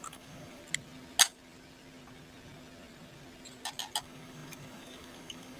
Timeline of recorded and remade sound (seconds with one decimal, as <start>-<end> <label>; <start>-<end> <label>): 0.0-0.6 remade; 0.6-4.0 recorded; 4.0-5.6 remade